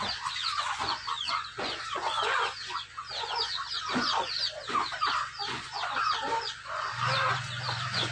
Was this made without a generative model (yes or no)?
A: no